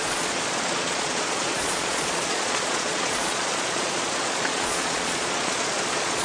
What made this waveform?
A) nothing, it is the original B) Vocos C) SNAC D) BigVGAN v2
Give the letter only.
B